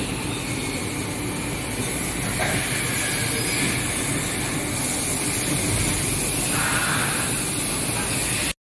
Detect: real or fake real